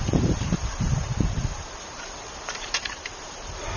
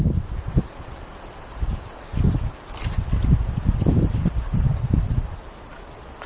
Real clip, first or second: second